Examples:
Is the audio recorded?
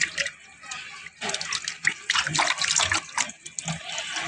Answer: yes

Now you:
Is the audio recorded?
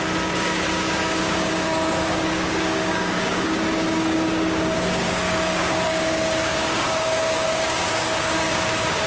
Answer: no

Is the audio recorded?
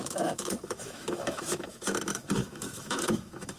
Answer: no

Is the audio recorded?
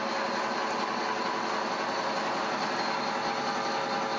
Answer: yes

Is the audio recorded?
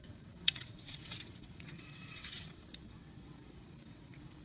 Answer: no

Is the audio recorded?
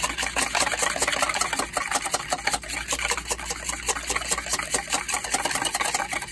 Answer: yes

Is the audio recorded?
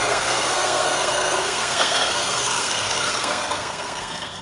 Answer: no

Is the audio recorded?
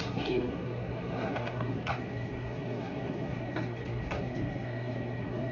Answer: no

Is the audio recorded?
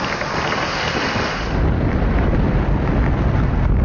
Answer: yes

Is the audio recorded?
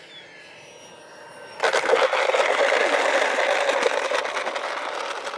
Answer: yes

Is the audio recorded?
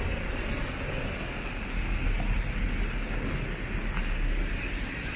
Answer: yes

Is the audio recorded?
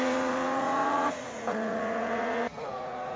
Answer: no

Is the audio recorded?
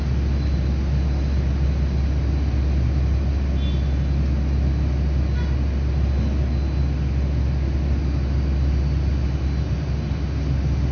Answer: yes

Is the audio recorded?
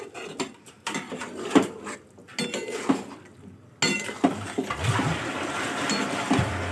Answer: yes